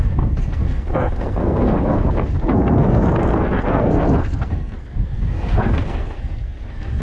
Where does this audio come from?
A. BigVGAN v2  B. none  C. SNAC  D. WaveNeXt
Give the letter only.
C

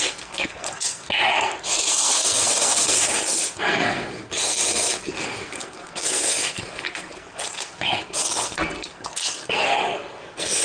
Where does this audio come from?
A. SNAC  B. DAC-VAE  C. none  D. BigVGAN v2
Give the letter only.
A